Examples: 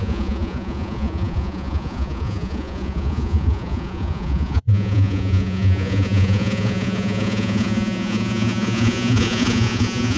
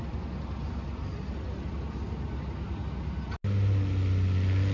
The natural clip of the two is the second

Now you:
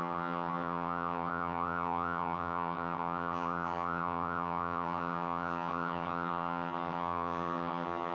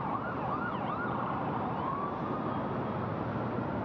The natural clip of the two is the second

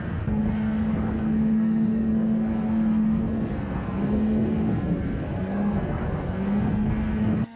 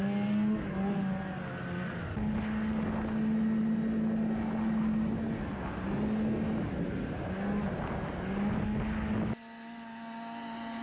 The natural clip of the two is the second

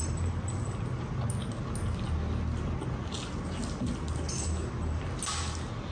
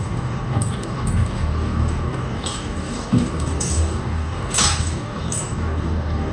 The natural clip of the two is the first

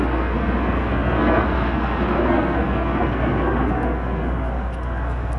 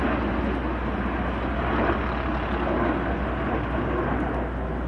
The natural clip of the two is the second